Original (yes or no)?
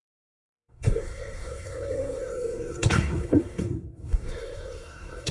no